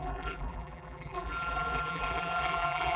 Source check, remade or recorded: remade